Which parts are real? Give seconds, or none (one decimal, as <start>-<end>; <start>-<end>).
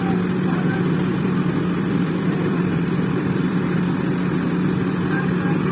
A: 0.0-1.1; 4.3-5.7